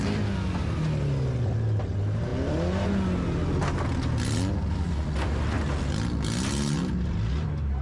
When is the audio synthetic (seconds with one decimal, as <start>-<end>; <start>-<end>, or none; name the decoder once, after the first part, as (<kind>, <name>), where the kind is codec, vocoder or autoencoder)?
none